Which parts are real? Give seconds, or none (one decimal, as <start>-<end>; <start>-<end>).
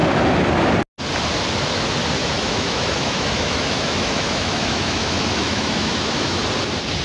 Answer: 0.0-2.2; 6.4-7.0